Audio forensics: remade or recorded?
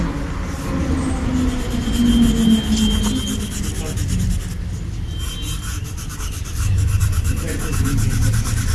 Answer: recorded